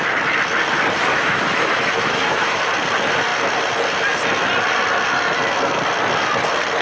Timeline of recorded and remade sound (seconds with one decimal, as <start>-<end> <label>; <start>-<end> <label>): 0.0-1.1 recorded; 1.1-2.6 remade; 2.6-6.8 recorded